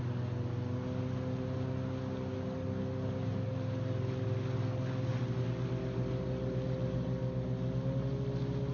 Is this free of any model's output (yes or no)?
yes